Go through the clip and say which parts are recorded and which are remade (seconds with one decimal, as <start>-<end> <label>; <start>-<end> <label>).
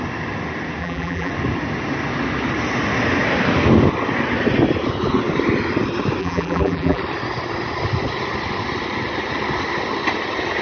0.0-0.8 recorded; 0.8-1.3 remade; 1.3-6.2 recorded; 6.2-7.0 remade; 7.0-10.6 recorded